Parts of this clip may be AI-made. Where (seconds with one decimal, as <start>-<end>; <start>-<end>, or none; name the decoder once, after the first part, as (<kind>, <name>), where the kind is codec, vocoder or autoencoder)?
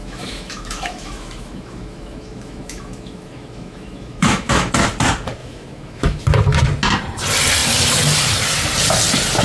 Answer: 0.0-4.7 (autoencoder, DAC-VAE); 5.4-6.2